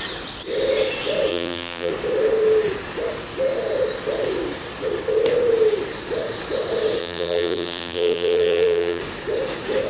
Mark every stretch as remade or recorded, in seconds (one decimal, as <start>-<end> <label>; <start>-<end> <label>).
0.0-1.3 recorded; 1.3-1.9 remade; 1.9-7.0 recorded; 7.0-9.0 remade; 9.0-9.9 recorded